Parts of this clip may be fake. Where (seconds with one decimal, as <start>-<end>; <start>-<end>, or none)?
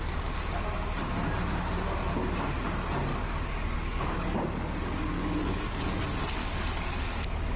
3.1-6.0; 6.4-7.6